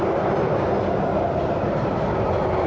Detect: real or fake real